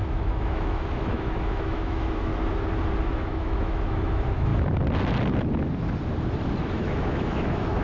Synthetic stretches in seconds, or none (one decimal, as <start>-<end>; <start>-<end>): 0.0-2.3; 3.0-4.5; 6.6-7.8